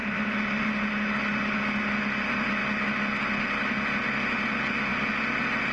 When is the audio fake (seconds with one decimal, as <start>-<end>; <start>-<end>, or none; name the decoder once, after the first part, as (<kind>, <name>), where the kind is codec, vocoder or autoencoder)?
0.0-0.7 (vocoder, BigVGAN v2); 4.9-5.7